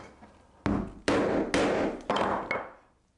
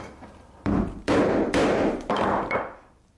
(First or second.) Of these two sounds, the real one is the first